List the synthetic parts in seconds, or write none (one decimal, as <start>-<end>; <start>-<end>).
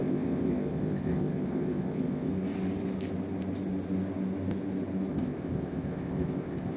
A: 0.0-2.3; 5.1-6.8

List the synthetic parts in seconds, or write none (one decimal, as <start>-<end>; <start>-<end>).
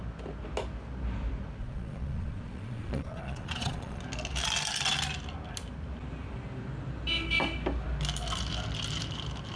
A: 1.6-4.0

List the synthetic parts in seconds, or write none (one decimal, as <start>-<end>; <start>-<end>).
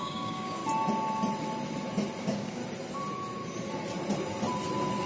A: 0.0-0.6; 2.2-2.6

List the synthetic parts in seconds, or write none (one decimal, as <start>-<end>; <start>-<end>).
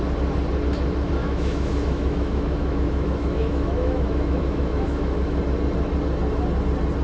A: 1.2-5.4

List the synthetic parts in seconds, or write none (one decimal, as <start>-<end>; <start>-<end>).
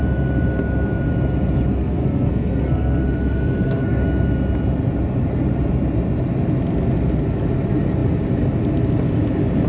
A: 1.7-4.0